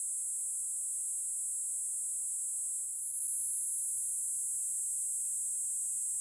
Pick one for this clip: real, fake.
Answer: real